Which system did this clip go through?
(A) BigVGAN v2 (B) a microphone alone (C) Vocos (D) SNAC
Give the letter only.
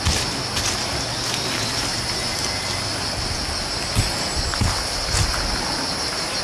B